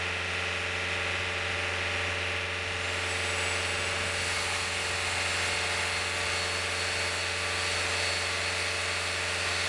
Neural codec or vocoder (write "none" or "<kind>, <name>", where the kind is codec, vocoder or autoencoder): none